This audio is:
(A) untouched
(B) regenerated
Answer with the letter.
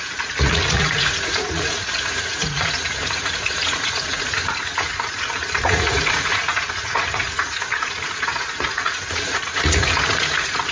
B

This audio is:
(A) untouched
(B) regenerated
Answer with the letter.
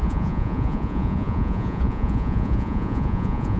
B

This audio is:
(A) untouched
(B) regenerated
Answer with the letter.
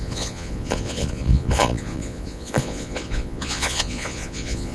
B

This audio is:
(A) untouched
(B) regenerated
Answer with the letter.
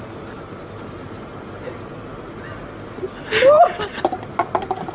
A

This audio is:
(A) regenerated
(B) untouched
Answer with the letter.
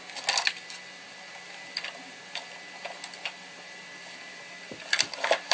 B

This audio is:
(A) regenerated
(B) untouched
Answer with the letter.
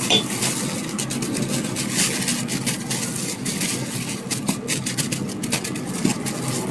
B